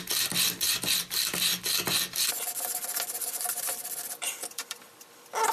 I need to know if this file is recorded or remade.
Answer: recorded